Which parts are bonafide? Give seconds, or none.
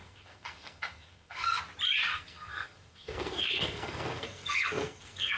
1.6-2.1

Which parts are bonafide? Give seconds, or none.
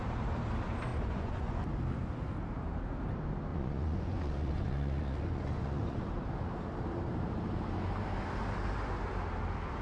0.0-0.9; 1.6-3.5; 6.1-9.8